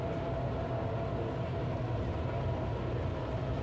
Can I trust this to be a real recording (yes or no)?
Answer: yes